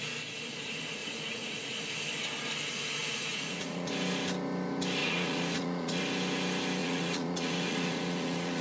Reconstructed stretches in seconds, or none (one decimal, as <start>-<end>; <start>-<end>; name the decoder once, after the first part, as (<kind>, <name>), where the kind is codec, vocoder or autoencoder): 1.0-1.8 (vocoder, Vocos); 3.0-3.9; 5.0-6.0; 6.8-8.6